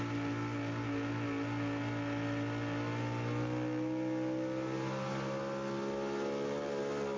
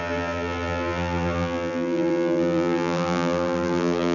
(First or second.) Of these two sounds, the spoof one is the second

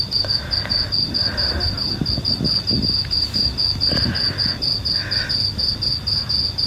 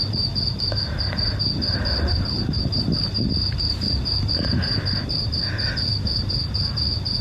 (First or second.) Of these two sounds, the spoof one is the second